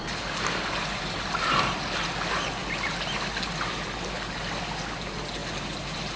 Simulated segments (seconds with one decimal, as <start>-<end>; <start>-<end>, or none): none